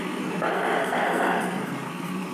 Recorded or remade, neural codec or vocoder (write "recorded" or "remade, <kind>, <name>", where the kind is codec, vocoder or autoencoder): remade, codec, SNAC